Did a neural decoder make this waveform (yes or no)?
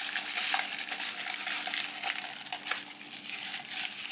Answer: no